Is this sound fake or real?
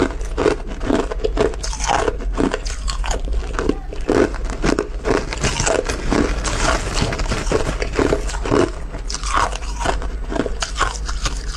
real